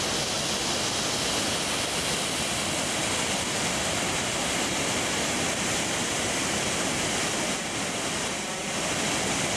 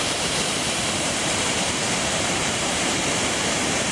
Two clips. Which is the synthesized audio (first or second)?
second